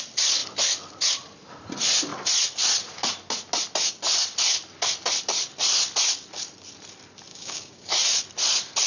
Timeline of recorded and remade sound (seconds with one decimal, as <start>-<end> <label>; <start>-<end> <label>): 0.0-7.3 recorded; 7.3-7.9 remade; 7.9-8.9 recorded